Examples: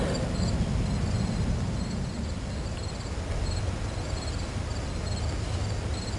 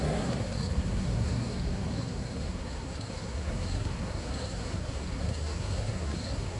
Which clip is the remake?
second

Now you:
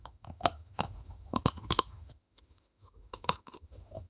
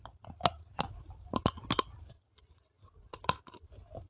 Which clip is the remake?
first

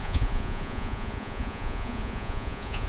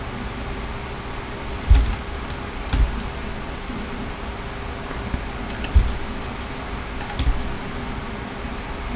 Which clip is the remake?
first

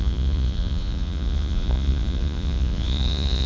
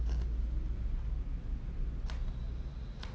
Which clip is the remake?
first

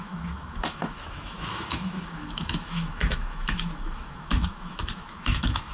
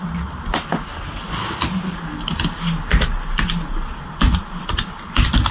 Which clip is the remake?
first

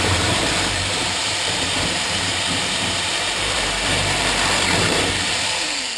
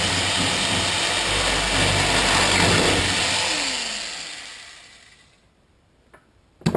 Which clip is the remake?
first